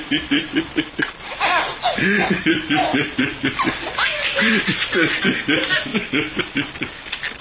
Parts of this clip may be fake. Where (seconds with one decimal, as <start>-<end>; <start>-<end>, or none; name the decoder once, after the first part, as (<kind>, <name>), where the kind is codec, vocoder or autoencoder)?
0.0-1.7 (vocoder, BigVGAN v2); 2.4-5.9; 6.4-7.4